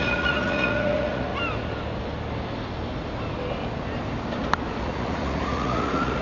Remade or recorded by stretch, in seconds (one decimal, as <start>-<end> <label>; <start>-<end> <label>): 0.0-1.3 remade; 1.3-4.8 recorded; 4.8-6.2 remade